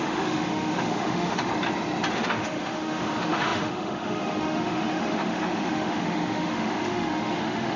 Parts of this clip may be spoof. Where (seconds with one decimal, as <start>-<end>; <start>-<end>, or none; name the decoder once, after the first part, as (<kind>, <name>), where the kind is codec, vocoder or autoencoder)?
0.0-1.5 (autoencoder, DAC-VAE); 2.1-7.8